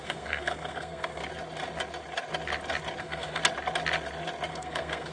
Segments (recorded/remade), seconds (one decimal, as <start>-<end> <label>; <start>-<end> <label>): 0.0-1.2 remade; 1.2-3.0 recorded; 3.0-3.4 remade; 3.4-4.5 recorded; 4.5-5.1 remade